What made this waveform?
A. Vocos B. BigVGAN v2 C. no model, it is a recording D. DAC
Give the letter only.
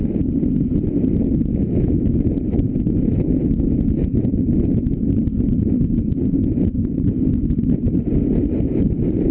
C